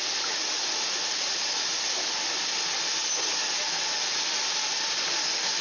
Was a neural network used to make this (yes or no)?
no